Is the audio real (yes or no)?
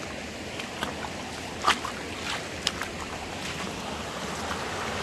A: yes